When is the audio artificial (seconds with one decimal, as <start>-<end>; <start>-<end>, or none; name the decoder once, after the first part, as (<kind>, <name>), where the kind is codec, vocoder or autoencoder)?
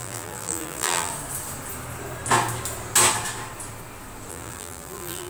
0.0-1.1 (vocoder, BigVGAN v2); 4.3-5.3